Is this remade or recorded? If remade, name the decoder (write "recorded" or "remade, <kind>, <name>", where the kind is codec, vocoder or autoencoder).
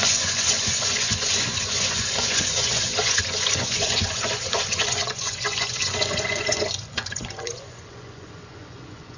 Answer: remade, vocoder, Vocos